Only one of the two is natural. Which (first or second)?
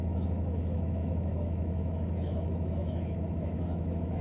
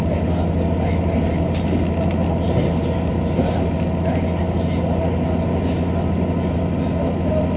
second